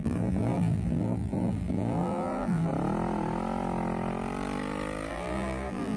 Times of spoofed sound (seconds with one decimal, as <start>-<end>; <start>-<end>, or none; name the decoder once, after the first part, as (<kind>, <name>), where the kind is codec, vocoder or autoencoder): 0.0-2.7 (vocoder, BigVGAN v2); 5.1-6.0